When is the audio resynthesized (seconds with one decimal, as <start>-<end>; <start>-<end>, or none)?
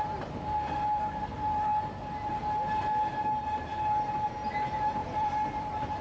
5.0-6.0